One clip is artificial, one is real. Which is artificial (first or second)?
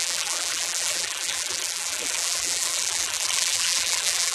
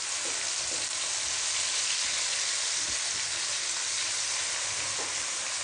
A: first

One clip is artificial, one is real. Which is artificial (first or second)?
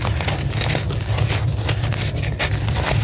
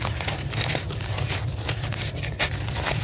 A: second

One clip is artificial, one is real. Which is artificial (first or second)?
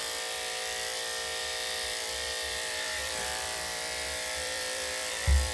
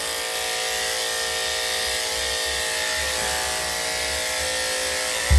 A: first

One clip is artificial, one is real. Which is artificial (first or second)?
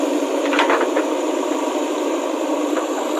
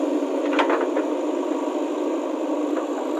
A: first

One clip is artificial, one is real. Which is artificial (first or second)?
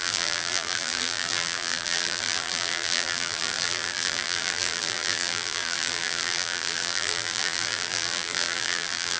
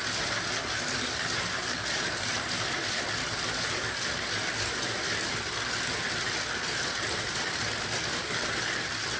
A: first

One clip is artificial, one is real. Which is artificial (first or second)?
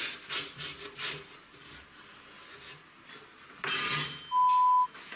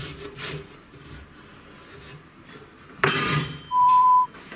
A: second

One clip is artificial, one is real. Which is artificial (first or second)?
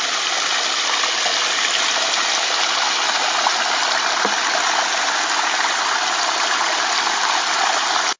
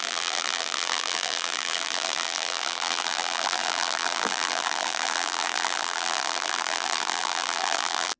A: second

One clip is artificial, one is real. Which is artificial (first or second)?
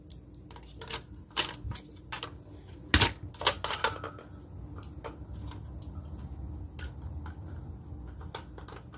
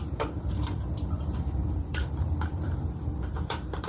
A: second